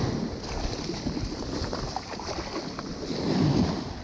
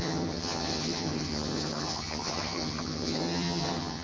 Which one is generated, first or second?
second